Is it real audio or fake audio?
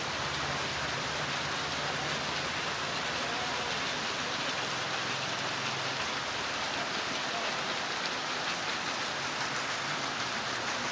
real